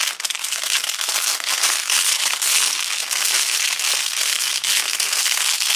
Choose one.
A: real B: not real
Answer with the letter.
B